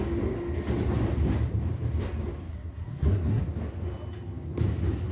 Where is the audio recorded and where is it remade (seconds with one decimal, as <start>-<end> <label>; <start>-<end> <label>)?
0.0-2.5 recorded; 2.5-3.4 remade; 3.4-5.1 recorded